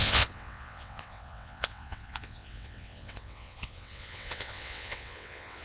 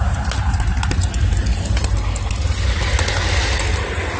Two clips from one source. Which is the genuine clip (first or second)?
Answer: second